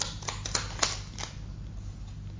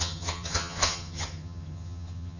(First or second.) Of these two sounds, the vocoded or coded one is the second